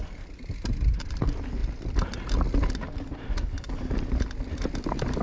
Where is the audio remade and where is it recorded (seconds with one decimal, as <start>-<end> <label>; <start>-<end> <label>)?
0.0-5.2 recorded